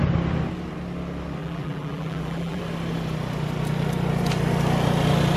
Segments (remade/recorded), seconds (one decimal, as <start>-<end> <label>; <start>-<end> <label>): 0.0-1.4 recorded; 1.4-2.6 remade; 2.6-5.4 recorded